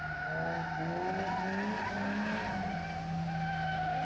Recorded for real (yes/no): yes